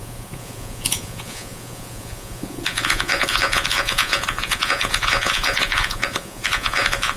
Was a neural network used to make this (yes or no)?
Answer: yes